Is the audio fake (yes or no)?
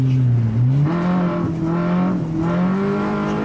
no